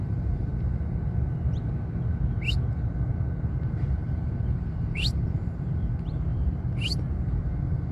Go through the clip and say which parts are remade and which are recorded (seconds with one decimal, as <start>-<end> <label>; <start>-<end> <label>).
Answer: 0.0-0.5 remade; 0.5-3.5 recorded; 3.5-7.9 remade